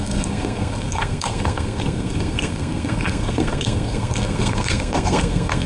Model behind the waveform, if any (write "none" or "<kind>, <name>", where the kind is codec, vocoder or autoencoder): codec, SNAC